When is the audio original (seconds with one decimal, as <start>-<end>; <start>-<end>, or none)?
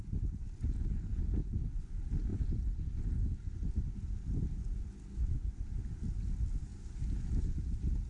0.0-8.1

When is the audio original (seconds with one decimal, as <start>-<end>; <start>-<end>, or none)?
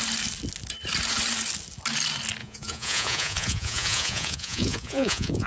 0.0-2.4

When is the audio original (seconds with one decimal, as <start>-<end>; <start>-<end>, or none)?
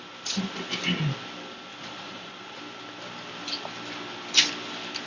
0.0-1.7; 2.6-5.1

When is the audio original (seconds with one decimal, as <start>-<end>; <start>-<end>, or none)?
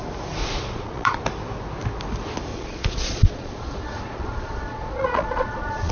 0.0-0.4; 1.2-2.5